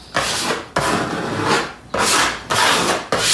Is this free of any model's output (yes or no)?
yes